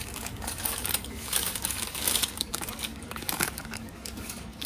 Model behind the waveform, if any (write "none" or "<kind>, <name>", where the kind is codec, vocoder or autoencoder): codec, DAC